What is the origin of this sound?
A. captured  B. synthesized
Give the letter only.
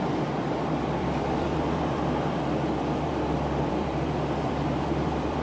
B